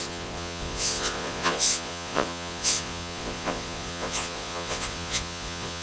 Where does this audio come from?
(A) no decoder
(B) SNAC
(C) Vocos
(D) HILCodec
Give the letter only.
C